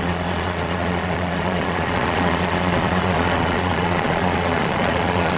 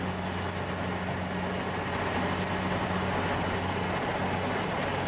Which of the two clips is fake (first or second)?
first